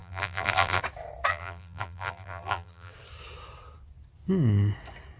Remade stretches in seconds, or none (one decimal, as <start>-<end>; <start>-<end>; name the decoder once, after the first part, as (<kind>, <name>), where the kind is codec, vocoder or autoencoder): 0.0-0.8 (vocoder, BigVGAN v2); 1.3-2.9